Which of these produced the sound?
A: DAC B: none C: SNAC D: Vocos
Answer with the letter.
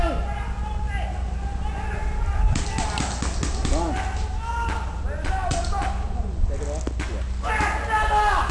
B